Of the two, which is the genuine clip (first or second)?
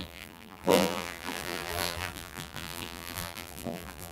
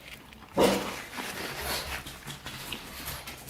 second